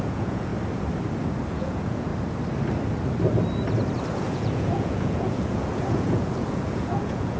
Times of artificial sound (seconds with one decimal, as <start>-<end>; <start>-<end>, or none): 0.0-0.5; 1.5-2.1; 4.2-7.4